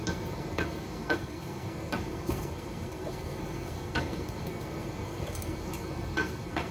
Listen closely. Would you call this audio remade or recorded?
remade